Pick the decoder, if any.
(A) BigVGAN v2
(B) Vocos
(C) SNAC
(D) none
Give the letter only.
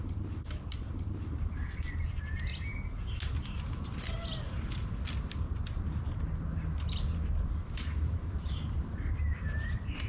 D